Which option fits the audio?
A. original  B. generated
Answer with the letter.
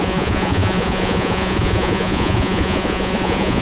B